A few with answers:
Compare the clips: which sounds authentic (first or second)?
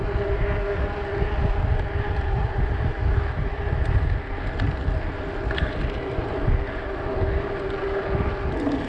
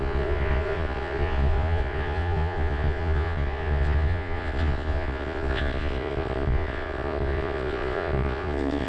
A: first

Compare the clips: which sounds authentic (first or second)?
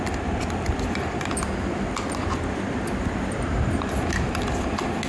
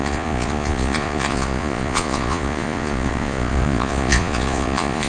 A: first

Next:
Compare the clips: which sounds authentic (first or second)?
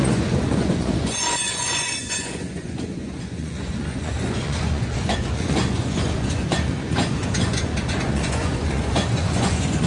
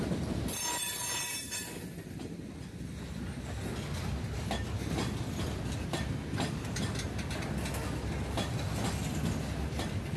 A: second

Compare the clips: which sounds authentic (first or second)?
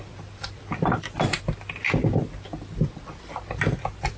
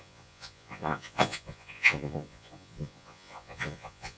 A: first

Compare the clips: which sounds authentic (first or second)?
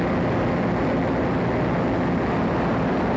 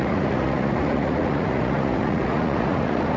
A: first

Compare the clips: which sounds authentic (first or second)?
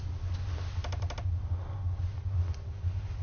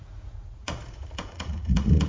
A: first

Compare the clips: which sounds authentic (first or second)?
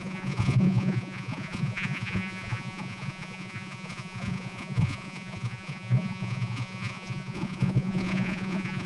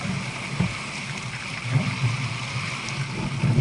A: second